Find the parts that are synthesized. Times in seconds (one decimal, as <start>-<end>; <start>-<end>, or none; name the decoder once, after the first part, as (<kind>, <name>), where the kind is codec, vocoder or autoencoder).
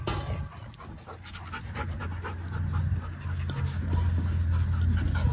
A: none